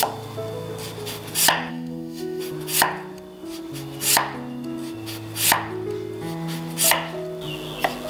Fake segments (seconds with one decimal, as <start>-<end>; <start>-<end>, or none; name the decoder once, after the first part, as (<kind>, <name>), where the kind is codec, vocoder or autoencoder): 1.7-2.4 (codec, SNAC)